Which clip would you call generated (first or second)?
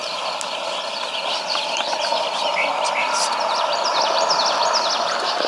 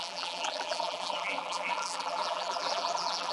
second